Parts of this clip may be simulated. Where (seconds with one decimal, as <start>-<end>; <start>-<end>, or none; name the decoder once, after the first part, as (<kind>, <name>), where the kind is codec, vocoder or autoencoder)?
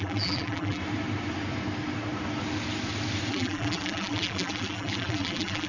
0.0-0.8 (vocoder, BigVGAN v2); 3.3-5.7